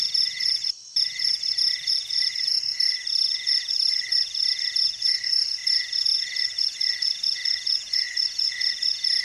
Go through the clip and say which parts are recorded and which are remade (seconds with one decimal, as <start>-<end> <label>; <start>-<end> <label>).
0.0-9.2 recorded